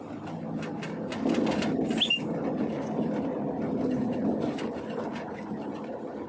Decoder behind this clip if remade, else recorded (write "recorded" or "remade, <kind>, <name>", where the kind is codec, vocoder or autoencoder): recorded